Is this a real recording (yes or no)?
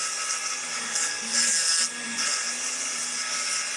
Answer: yes